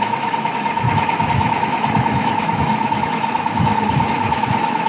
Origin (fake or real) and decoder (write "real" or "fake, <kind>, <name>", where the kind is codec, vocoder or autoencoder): fake, autoencoder, DAC-VAE